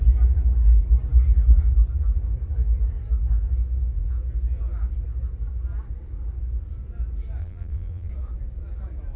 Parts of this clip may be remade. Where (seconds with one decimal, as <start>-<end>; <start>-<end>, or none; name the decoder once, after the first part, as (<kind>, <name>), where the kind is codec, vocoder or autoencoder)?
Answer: 7.4-8.1 (vocoder, BigVGAN v2)